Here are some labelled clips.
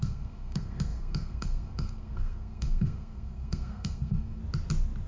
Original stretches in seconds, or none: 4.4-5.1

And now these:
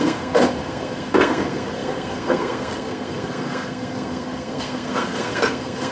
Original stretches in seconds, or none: none